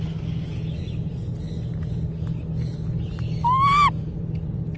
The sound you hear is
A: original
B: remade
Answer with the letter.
A